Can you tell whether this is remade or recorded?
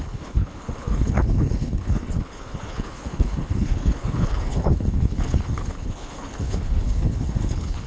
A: remade